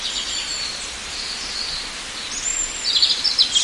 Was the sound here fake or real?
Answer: real